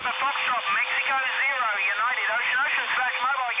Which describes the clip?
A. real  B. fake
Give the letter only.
A